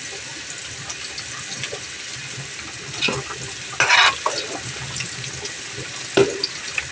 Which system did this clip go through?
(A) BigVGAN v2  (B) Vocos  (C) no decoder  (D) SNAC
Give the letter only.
C